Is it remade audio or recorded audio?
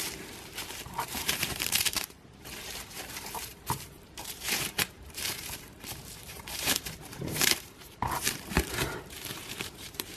remade